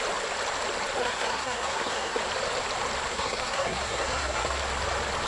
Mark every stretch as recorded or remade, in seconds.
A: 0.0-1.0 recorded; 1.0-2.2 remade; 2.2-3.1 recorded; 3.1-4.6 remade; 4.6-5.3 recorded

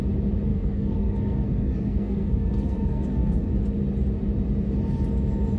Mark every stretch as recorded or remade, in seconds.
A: 0.0-0.5 recorded; 0.5-3.5 remade; 3.5-5.6 recorded

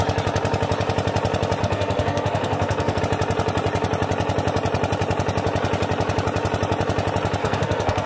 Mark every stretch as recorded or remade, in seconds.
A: 0.0-1.6 recorded; 1.6-3.0 remade; 3.0-7.4 recorded; 7.4-8.1 remade

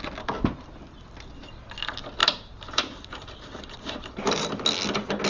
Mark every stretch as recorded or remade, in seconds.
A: 0.0-2.2 recorded; 2.2-4.5 remade; 4.5-5.3 recorded

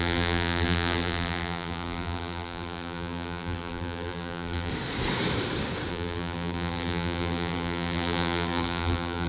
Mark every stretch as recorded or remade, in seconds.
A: 0.0-4.7 remade; 4.7-5.9 recorded; 5.9-9.3 remade